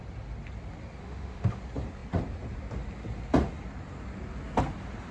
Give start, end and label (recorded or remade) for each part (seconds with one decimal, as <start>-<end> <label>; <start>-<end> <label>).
0.0-1.0 recorded; 1.0-1.6 remade; 1.6-5.1 recorded